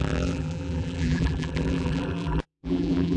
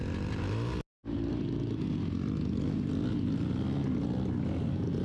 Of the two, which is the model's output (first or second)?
first